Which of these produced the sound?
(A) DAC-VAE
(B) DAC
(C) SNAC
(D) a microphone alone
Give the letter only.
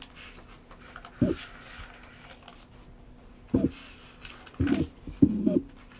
D